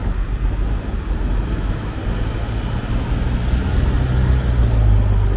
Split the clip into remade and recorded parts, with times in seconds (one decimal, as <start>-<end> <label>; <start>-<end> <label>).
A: 0.0-1.5 recorded; 1.5-2.0 remade; 2.0-5.4 recorded